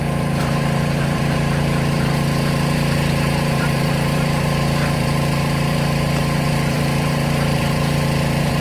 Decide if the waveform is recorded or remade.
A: remade